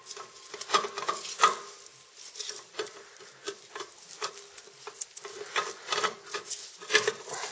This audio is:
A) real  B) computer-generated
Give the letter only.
A